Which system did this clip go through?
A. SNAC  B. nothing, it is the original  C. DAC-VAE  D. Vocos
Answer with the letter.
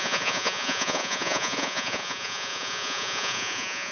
D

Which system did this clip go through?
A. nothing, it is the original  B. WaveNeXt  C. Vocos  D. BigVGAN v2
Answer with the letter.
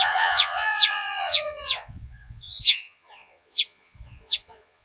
C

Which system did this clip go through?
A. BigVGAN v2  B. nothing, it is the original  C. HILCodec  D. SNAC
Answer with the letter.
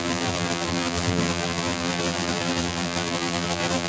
A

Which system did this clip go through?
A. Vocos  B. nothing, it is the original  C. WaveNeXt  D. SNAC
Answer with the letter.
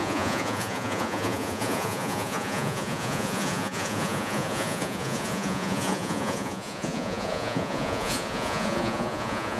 A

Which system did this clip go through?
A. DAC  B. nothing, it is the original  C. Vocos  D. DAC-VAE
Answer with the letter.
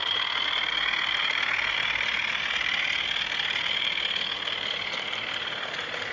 B